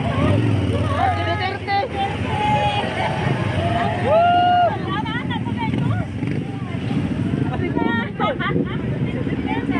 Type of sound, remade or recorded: recorded